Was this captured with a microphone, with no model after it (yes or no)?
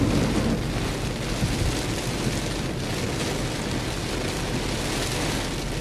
yes